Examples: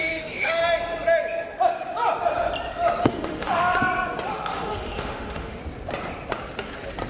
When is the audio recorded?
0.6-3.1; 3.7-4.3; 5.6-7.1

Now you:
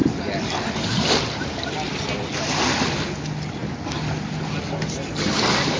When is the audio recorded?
0.0-5.8

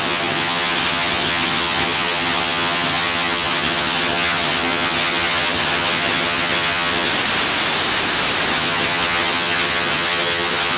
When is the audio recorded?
7.1-8.5

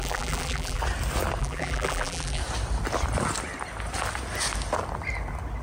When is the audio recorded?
0.8-1.4; 2.4-5.6